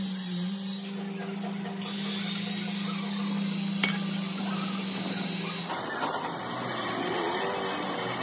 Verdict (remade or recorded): recorded